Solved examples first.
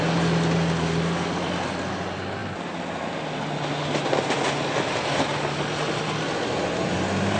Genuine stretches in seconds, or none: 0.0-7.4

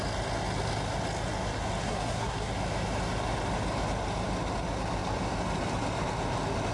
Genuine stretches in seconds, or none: 0.0-1.8; 2.5-6.7

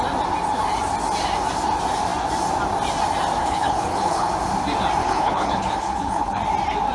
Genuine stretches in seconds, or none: 0.0-3.4; 4.3-5.0; 6.4-6.9